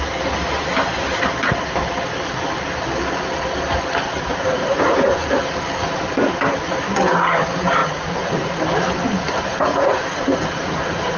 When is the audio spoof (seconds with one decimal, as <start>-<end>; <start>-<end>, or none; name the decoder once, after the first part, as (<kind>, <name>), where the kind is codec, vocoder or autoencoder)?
4.3-5.4 (vocoder, Vocos); 7.8-8.6; 9.7-11.2